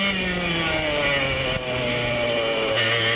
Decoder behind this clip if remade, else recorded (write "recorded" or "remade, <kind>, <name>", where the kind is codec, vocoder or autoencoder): recorded